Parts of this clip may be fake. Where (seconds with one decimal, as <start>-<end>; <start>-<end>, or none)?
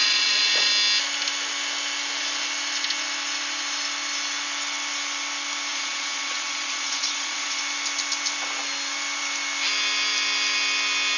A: 0.0-0.7; 5.7-7.6